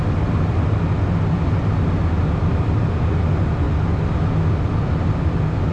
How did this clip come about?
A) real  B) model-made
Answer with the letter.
A